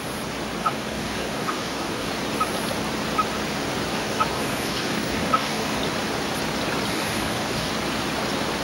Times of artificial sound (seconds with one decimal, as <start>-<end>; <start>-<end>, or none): 0.6-2.1; 3.9-5.8; 6.9-7.7